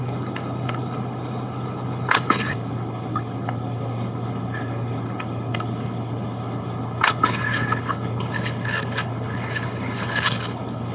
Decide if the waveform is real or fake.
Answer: fake